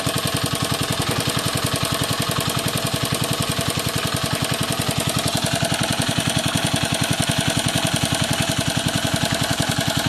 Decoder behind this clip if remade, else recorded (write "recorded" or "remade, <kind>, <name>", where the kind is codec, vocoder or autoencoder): recorded